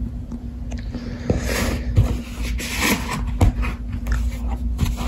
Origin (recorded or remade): recorded